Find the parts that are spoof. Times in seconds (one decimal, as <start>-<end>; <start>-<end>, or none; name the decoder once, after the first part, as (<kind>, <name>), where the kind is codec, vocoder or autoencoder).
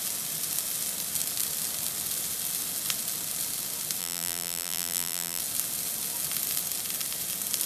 4.0-5.4 (vocoder, BigVGAN v2)